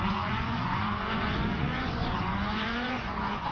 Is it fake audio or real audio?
fake